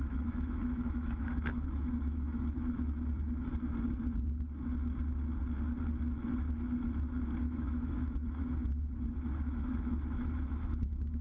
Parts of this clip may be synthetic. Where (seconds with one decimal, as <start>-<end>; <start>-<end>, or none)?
0.0-3.5; 7.4-11.2